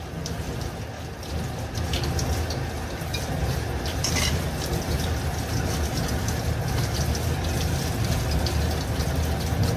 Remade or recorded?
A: recorded